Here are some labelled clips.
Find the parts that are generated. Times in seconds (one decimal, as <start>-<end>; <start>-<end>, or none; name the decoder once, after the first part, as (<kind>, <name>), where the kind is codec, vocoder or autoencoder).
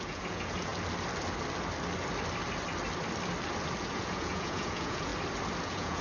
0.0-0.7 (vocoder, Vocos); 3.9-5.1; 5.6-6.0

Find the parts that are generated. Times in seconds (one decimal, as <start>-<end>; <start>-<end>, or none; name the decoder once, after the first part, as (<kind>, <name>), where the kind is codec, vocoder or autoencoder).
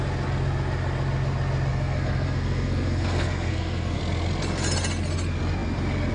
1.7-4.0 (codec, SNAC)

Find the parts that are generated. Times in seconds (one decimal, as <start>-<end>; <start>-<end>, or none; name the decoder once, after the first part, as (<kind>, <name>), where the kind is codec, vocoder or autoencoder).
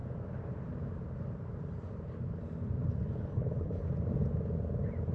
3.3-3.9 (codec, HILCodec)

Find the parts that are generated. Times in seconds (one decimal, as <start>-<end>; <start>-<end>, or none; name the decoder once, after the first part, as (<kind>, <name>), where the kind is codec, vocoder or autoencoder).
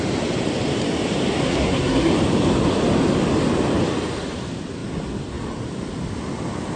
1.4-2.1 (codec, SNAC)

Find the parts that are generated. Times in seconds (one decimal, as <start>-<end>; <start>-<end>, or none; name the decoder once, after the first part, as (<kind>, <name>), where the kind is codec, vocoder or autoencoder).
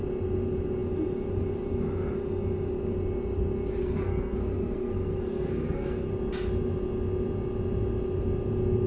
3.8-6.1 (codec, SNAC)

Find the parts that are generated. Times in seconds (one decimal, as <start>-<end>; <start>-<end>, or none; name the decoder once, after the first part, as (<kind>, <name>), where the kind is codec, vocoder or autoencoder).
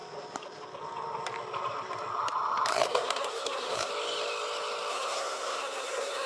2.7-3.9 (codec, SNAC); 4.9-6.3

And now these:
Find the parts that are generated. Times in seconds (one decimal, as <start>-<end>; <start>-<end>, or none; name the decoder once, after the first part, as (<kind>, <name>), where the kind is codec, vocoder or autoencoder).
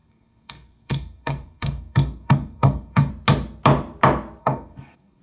0.0-3.1 (codec, SNAC); 4.4-5.2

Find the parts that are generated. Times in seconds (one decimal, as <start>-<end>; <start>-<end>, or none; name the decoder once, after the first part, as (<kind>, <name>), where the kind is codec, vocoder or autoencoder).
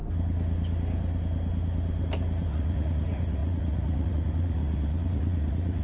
2.5-5.8 (vocoder, Vocos)